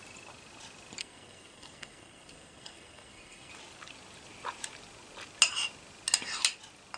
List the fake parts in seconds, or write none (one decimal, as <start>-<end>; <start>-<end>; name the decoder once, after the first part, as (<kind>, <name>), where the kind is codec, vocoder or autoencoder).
1.0-3.5 (codec, SNAC)